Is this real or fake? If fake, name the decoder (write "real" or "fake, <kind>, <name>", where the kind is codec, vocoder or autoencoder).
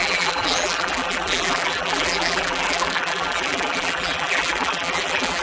fake, vocoder, BigVGAN v2